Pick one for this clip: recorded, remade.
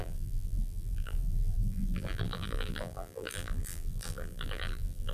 remade